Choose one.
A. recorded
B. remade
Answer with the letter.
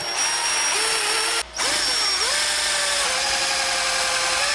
A